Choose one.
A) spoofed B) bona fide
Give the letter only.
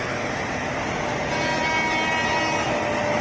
B